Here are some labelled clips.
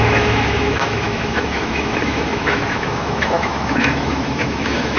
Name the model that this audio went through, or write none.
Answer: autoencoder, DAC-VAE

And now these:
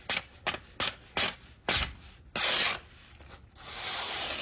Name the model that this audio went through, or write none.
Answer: none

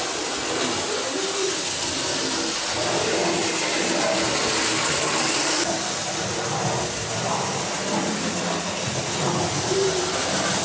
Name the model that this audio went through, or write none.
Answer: none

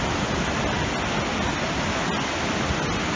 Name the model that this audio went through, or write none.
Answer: none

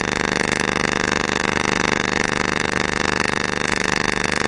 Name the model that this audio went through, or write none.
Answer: autoencoder, DAC-VAE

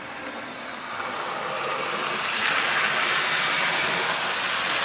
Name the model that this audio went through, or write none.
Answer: none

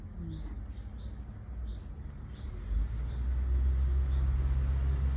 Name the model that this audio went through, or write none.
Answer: none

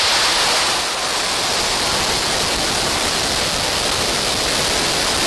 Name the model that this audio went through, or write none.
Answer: none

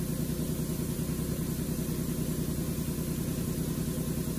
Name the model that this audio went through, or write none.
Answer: none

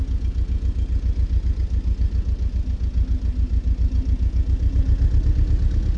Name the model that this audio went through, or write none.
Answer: none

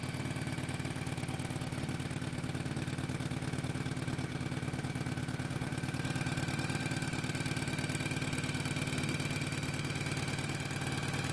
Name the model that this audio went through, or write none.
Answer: none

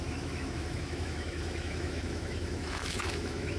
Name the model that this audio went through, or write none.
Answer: autoencoder, DAC-VAE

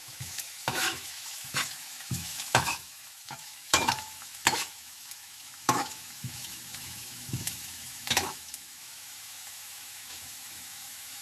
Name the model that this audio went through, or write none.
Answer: autoencoder, DAC-VAE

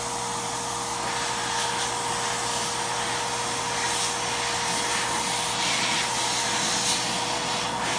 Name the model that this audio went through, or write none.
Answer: none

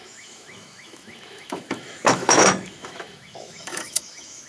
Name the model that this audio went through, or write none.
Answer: autoencoder, DAC-VAE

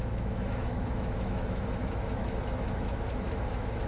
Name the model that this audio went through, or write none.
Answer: autoencoder, DAC-VAE